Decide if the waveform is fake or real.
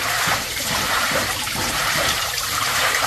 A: fake